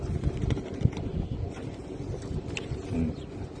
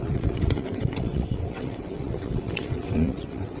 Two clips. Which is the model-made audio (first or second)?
second